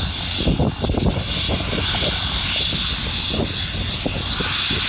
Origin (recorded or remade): recorded